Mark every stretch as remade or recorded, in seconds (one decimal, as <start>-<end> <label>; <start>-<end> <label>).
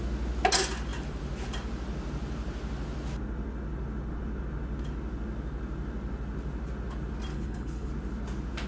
0.0-7.3 recorded; 7.3-7.9 remade; 7.9-8.7 recorded